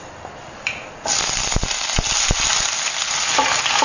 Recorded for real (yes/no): yes